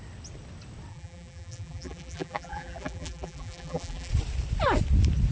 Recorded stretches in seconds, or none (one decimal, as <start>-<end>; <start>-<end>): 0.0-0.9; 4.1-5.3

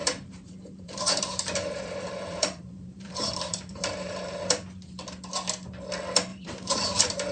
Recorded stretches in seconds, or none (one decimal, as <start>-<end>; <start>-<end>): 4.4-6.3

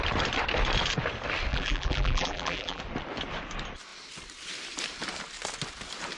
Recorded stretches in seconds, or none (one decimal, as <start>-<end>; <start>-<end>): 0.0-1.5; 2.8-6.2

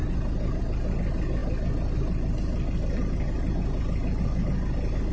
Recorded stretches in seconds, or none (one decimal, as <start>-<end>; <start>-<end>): 0.0-5.1